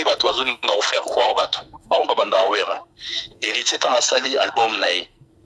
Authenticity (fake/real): fake